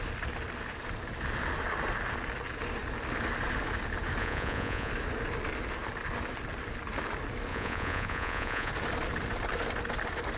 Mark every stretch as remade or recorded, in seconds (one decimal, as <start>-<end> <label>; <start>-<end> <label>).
0.0-4.2 recorded; 4.2-4.9 remade; 4.9-7.5 recorded; 7.5-8.7 remade; 8.7-10.4 recorded